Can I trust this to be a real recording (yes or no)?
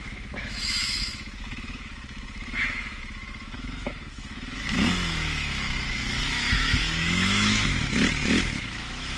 no